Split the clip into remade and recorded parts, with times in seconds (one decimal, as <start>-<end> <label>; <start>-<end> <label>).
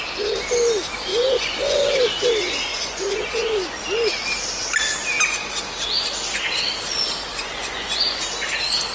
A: 0.0-1.1 recorded; 1.1-1.9 remade; 1.9-2.7 recorded; 2.7-3.8 remade; 3.8-7.3 recorded; 7.3-8.2 remade; 8.2-8.9 recorded